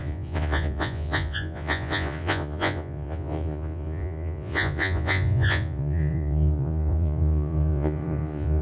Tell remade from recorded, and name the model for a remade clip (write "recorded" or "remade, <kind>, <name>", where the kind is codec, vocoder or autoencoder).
remade, vocoder, Vocos